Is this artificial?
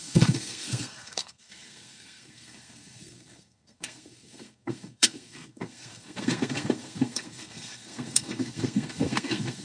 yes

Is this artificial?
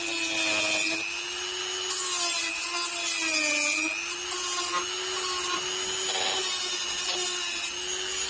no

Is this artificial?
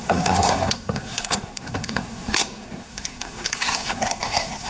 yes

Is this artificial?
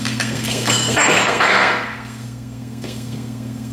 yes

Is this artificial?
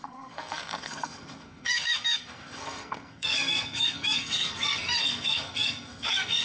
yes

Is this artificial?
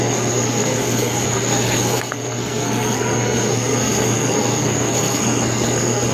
yes